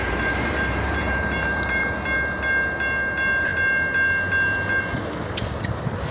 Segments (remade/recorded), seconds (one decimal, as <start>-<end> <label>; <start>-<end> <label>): 0.0-1.8 remade; 1.8-6.1 recorded